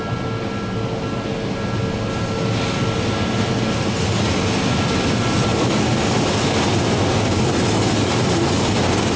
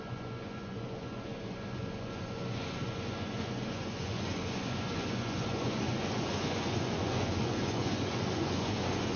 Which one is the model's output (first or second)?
second